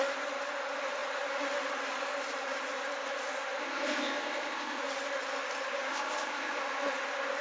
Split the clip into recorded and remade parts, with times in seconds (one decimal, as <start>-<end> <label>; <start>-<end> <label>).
0.0-3.6 recorded; 3.6-4.8 remade; 4.8-5.9 recorded; 5.9-6.6 remade; 6.6-7.4 recorded